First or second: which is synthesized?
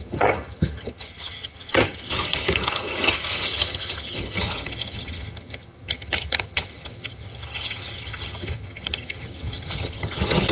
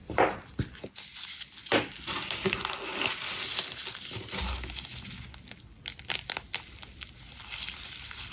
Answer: first